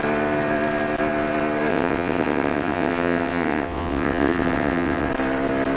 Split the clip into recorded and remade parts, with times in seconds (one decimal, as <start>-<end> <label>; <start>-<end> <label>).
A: 0.0-1.7 recorded; 1.7-5.1 remade; 5.1-5.8 recorded